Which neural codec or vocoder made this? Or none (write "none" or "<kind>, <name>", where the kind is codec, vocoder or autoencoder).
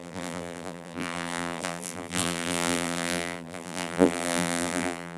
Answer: vocoder, BigVGAN v2